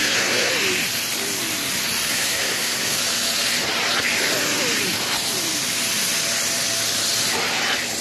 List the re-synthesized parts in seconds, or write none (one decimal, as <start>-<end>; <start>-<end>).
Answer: 0.0-0.5; 2.1-3.0